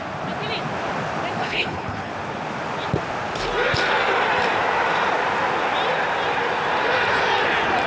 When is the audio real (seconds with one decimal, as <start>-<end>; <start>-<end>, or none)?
0.0-1.4; 2.1-7.9